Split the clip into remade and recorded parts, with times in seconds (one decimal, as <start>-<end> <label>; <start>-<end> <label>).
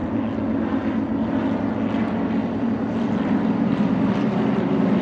0.0-2.4 recorded; 2.4-5.0 remade